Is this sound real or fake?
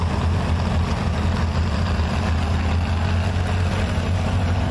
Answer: real